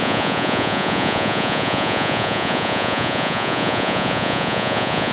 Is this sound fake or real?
fake